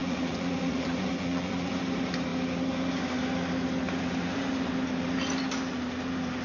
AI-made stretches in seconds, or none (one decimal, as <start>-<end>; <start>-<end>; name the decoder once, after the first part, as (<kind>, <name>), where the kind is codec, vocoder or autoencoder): 0.0-1.7 (vocoder, Vocos)